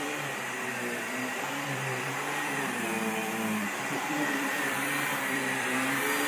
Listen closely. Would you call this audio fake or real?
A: fake